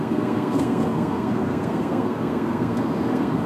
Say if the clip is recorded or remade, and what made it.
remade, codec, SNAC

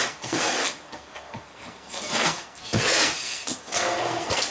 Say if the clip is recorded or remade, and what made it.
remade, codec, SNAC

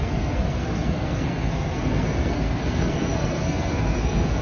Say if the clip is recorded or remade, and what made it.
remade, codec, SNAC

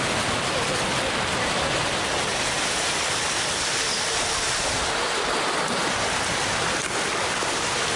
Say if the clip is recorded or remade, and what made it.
recorded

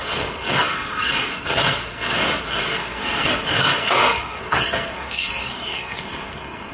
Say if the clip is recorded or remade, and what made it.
remade, codec, SNAC